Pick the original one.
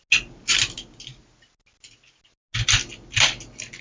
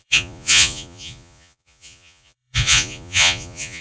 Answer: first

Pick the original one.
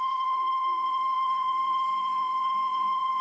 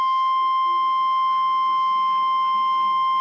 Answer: second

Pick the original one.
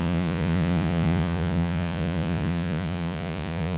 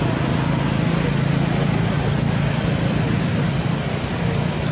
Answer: second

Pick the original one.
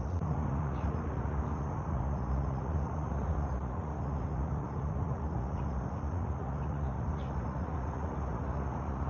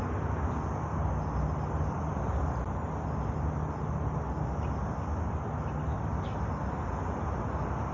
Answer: second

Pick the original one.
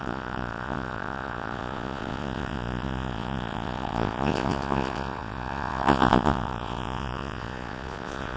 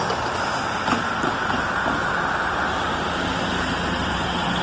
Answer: second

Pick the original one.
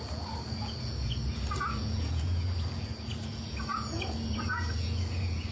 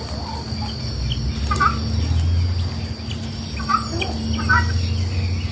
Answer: second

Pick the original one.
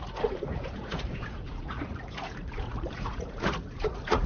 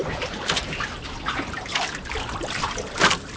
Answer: second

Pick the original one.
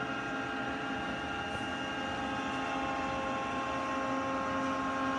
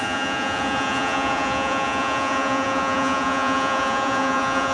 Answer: first